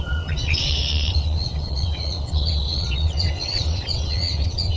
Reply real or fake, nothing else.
fake